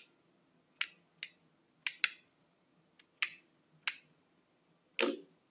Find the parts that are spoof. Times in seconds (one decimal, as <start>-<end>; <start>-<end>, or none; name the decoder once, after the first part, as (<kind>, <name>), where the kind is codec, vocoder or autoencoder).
none